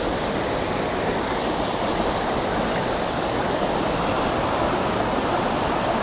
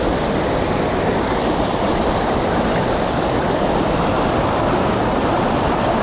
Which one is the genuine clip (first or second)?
first